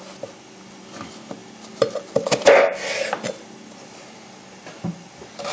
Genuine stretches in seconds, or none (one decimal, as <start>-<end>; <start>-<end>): 0.0-5.5